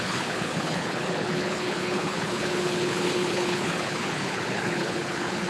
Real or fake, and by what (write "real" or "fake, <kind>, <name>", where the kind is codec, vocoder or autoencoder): fake, codec, HILCodec